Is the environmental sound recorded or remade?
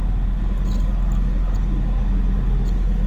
recorded